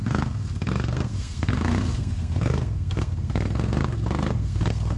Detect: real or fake fake